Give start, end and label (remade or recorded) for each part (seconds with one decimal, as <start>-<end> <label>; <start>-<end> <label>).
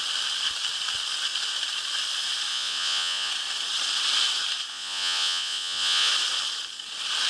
0.0-2.5 recorded; 2.5-3.3 remade; 3.3-4.7 recorded; 4.7-6.1 remade; 6.1-7.3 recorded